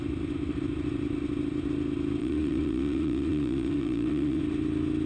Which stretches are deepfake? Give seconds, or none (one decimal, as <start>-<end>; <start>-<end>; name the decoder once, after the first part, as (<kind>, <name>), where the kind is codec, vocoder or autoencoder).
2.2-4.4 (vocoder, Vocos)